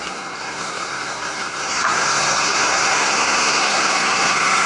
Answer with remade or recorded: remade